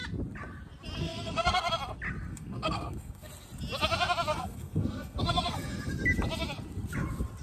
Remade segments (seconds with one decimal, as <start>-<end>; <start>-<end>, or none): 1.0-1.7; 2.3-3.3; 4.3-5.9